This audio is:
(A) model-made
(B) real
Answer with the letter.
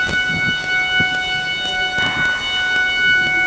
B